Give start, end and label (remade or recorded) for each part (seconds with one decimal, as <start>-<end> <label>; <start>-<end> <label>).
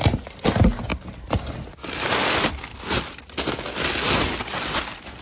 0.0-5.2 recorded